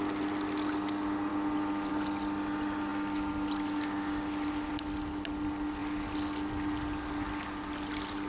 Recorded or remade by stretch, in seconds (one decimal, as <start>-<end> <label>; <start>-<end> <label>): 0.0-8.3 recorded